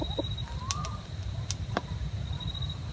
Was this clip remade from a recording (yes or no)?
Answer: no